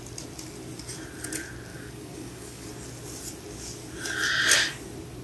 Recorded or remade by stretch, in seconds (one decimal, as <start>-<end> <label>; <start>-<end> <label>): 0.0-1.7 recorded; 1.7-2.7 remade; 2.7-5.2 recorded